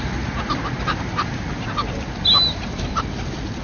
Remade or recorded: recorded